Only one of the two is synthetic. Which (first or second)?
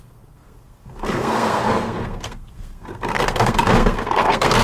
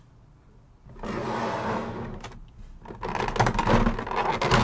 first